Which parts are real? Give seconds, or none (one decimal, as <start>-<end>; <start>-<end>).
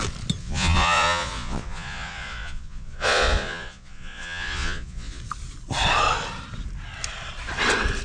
0.0-0.4; 5.2-8.0